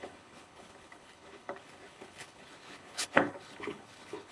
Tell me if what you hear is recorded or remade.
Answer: remade